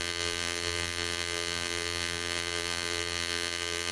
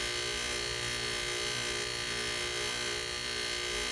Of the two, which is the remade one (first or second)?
first